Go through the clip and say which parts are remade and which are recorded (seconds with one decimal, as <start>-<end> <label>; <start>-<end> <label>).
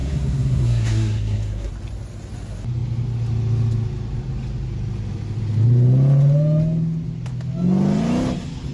0.0-1.7 remade; 1.7-8.7 recorded